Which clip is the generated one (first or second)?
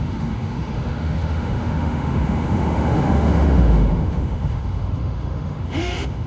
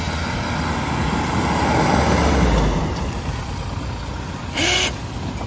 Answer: first